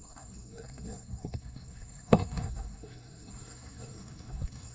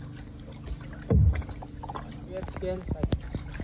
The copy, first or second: first